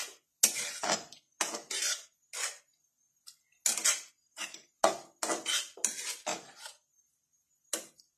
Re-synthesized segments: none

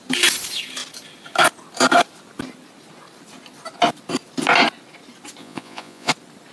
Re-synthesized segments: 5.4-6.1

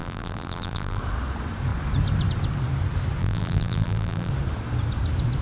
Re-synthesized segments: 0.0-1.0; 3.2-4.3

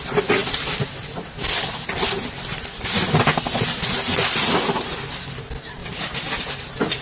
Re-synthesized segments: 5.8-6.5

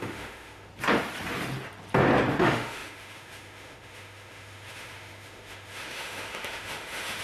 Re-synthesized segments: 0.0-0.7; 2.4-7.2